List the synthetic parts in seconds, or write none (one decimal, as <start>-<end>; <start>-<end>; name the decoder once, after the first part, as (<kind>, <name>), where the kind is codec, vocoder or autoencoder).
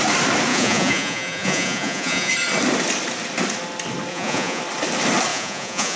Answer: 0.5-2.3 (vocoder, Vocos); 4.1-4.6; 5.3-6.0